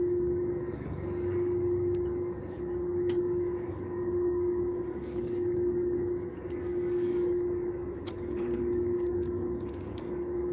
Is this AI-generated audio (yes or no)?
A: yes